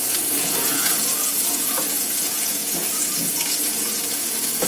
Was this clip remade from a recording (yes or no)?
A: yes